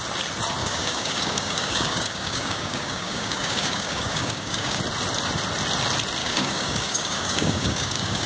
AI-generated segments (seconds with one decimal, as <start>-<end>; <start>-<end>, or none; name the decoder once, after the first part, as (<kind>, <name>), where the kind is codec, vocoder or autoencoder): 0.6-4.8 (codec, DAC); 6.2-8.3